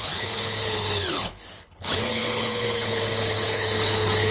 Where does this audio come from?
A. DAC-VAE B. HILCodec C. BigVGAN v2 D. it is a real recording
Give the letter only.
B